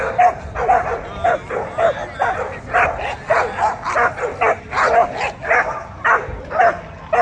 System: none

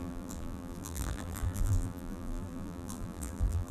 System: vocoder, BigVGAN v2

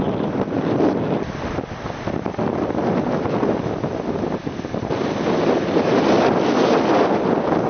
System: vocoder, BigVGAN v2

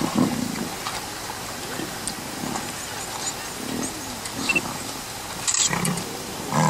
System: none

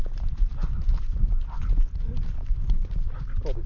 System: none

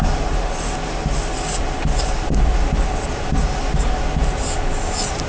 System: none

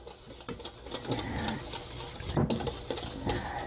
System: none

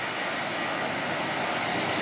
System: none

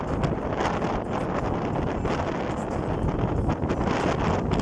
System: none